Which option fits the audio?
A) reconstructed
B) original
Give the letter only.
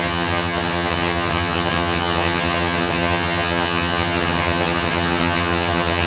A